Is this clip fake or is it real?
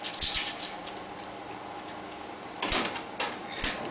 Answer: fake